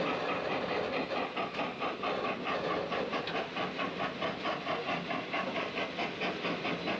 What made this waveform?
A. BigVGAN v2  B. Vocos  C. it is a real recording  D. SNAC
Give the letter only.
C